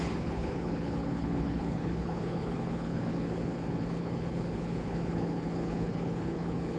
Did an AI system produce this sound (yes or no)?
yes